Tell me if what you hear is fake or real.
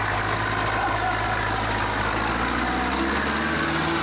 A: real